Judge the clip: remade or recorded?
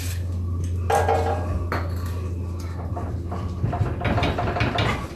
recorded